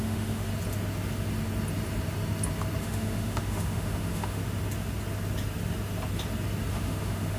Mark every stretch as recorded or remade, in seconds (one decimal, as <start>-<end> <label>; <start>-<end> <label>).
0.0-0.5 remade; 0.5-2.8 recorded; 2.8-4.4 remade; 4.4-6.7 recorded; 6.7-7.4 remade